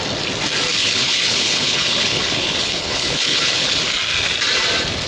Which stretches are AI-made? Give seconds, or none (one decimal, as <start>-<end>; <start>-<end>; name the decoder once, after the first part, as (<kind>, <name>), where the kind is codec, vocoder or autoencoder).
0.7-3.8 (codec, HILCodec)